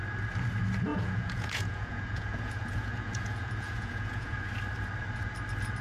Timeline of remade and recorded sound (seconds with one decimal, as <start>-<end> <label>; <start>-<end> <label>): 0.0-0.9 recorded; 0.9-4.4 remade; 4.4-5.8 recorded